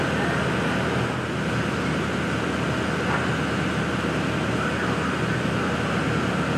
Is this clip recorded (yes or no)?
yes